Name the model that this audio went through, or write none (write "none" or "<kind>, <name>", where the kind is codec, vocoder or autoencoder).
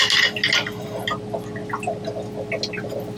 none